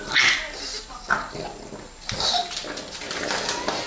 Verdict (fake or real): real